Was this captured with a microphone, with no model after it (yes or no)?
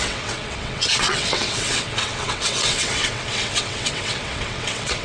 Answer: no